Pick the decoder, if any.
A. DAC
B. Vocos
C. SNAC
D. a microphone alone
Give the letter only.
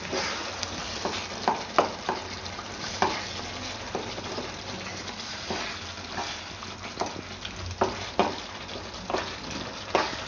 D